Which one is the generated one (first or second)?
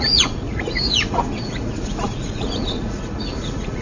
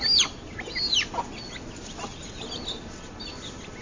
first